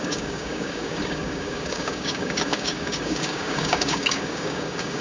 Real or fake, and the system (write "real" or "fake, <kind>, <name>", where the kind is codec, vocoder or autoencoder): fake, codec, DAC